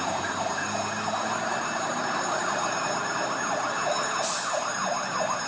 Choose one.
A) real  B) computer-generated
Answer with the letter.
A